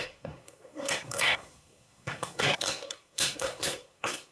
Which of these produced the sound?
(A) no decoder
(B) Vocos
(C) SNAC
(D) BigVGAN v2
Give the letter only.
C